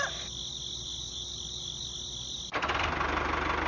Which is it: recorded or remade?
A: recorded